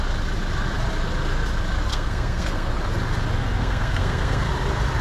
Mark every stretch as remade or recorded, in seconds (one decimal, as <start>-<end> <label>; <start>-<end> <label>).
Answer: 0.0-1.9 recorded; 1.9-2.7 remade; 2.7-3.6 recorded; 3.6-4.5 remade; 4.5-5.0 recorded